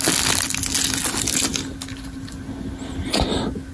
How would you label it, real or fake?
real